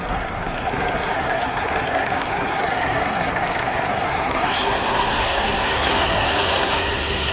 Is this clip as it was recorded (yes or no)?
no